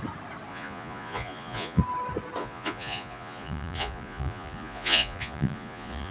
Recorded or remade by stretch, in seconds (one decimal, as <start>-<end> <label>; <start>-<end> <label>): 0.0-0.5 recorded; 0.5-1.8 remade; 1.8-2.4 recorded; 2.4-6.1 remade